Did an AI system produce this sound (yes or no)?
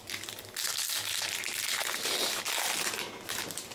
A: no